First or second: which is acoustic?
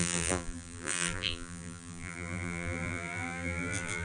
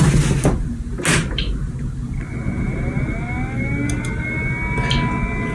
second